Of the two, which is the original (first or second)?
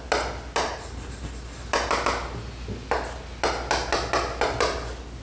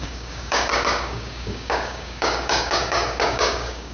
first